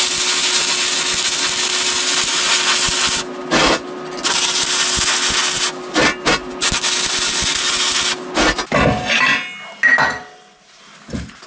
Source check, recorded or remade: recorded